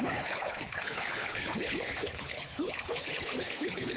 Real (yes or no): no